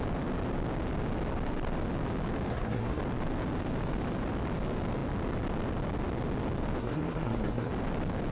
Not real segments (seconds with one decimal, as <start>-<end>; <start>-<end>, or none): 2.5-3.0; 6.8-7.7